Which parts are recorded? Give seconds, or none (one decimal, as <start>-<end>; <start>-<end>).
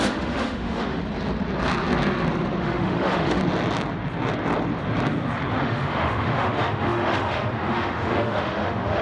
1.0-2.6; 3.4-5.6